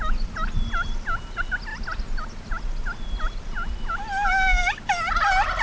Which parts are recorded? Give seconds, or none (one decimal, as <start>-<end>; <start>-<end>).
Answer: 0.0-5.6